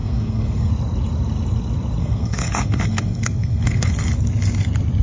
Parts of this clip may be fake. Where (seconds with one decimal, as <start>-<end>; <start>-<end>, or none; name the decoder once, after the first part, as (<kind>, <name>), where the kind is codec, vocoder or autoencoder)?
0.0-0.7 (codec, SNAC); 2.0-3.9

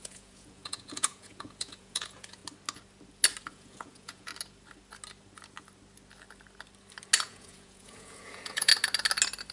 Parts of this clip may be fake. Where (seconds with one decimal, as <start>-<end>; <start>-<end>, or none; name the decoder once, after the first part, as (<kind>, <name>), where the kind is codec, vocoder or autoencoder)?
0.0-2.4 (vocoder, Vocos); 3.5-4.3; 7.2-8.7

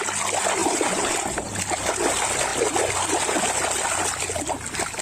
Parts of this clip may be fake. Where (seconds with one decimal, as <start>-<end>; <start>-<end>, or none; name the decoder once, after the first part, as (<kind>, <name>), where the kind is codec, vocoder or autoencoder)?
0.6-1.6 (vocoder, BigVGAN v2)

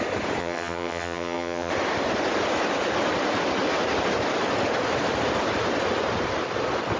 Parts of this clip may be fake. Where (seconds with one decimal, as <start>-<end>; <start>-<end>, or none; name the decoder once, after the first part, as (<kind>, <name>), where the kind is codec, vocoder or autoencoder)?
0.4-1.7 (vocoder, HiFi-GAN)

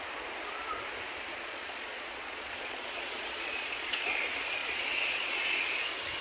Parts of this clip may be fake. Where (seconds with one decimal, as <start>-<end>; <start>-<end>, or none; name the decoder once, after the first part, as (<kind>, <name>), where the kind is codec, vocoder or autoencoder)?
1.3-4.0 (vocoder, Vocos); 4.6-5.6

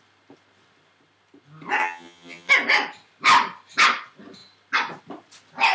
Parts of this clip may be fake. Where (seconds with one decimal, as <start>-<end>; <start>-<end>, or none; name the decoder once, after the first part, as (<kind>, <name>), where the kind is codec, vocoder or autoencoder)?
1.8-2.5 (vocoder, HiFi-GAN)

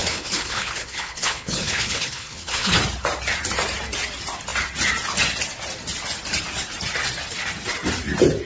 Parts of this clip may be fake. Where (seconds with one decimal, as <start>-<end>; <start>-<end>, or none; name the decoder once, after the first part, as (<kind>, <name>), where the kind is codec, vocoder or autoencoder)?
0.0-2.8 (codec, HILCodec)

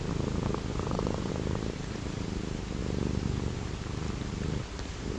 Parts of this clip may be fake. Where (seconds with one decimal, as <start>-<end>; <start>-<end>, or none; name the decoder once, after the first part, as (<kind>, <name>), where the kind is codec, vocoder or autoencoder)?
0.7-1.3 (vocoder, Vocos)